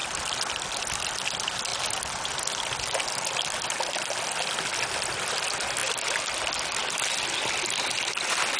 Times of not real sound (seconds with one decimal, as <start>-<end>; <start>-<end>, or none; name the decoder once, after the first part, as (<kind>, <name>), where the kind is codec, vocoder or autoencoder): none